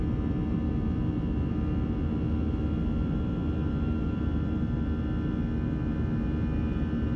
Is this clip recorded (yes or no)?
yes